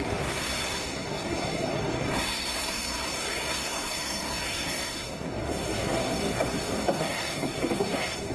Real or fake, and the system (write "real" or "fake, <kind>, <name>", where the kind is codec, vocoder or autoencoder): fake, codec, SNAC